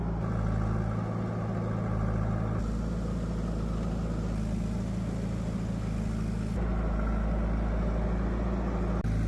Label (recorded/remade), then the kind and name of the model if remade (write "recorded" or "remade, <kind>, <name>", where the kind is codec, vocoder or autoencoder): recorded